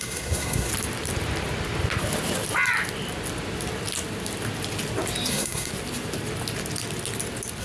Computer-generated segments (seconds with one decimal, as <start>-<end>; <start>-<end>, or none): 0.0-0.7; 5.3-5.7